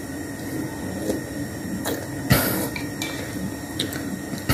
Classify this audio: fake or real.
real